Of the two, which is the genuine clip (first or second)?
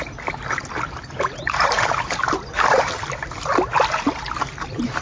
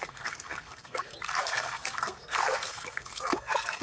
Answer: first